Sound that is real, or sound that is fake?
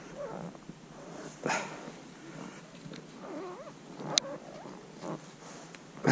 real